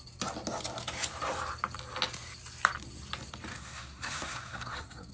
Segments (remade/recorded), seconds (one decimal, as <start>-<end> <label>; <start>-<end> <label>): 0.0-3.5 recorded; 3.5-5.1 remade